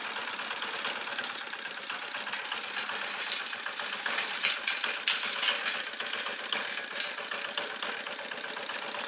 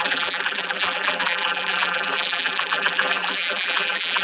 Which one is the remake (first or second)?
second